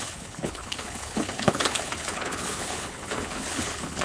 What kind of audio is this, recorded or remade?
remade